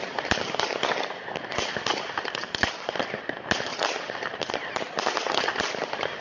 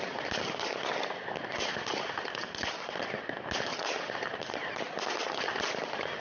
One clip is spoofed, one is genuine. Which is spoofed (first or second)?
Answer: first